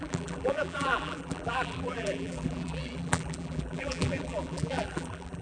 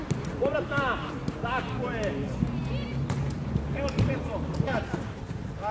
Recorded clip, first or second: second